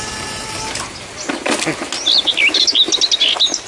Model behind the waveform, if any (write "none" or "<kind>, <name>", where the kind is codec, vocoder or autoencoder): none